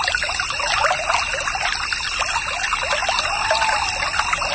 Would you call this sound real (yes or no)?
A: yes